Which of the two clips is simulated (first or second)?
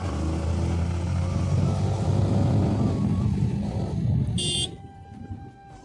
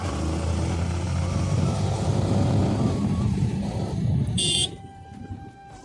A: second